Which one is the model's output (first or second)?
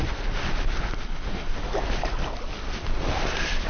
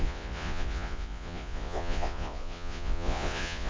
second